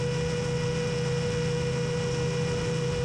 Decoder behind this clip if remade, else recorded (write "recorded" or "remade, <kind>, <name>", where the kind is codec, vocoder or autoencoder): recorded